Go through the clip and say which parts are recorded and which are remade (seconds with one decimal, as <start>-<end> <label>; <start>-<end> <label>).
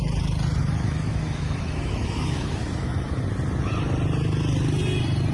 0.0-0.6 recorded; 0.6-3.2 remade; 3.2-5.3 recorded